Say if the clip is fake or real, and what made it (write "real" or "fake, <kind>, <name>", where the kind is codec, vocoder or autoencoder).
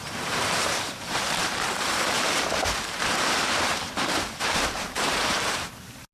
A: fake, vocoder, BigVGAN v2